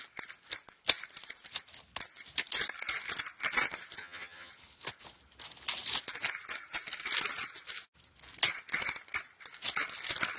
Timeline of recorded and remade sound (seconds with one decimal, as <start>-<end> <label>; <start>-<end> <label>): 0.0-4.0 recorded; 4.0-4.5 remade; 4.5-10.4 recorded